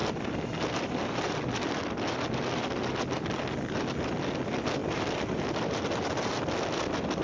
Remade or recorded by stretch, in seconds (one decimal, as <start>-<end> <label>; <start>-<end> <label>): 0.0-7.2 recorded